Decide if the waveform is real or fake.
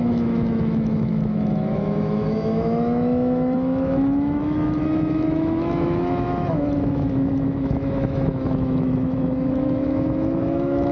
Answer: fake